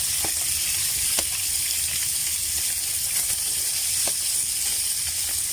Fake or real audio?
real